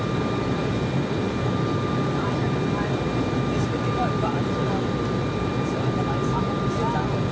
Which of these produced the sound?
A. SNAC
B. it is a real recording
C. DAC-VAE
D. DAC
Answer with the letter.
B